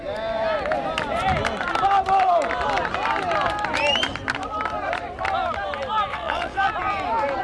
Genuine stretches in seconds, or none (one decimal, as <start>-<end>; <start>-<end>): 0.0-6.1; 6.7-7.4